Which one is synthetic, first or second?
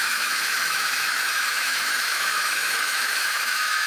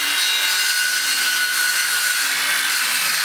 first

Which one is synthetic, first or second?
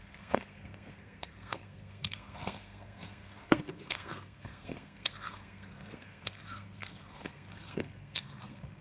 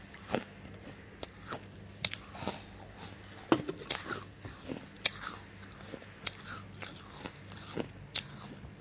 first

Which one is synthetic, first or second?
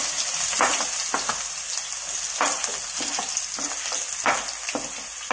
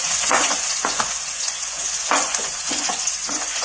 second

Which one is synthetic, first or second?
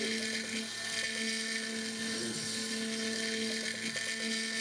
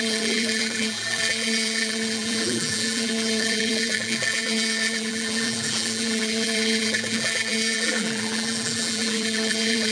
second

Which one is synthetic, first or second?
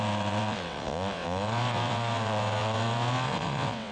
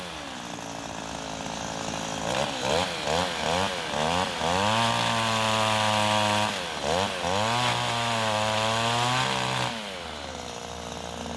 first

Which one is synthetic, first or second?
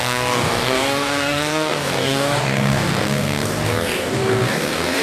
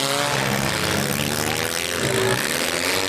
first